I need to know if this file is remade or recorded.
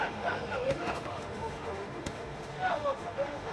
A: remade